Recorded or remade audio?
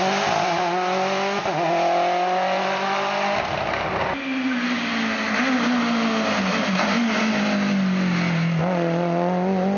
recorded